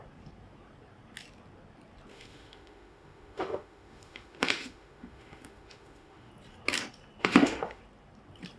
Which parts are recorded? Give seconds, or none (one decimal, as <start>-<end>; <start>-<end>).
0.0-2.1; 6.3-7.2; 7.8-8.6

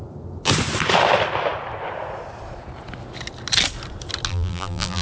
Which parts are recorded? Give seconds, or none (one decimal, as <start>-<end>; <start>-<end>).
0.0-4.3

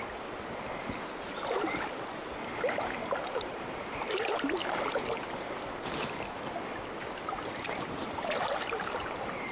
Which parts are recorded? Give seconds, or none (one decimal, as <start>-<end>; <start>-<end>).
0.0-9.5